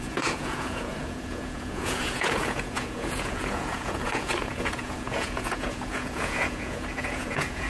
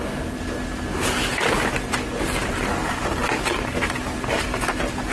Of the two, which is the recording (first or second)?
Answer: second